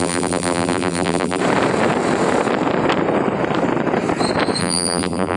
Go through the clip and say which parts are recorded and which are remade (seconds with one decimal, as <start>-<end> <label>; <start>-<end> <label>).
0.0-1.4 remade; 1.4-4.6 recorded; 4.6-5.4 remade